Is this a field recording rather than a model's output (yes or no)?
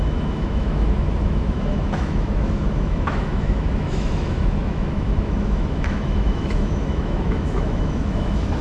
no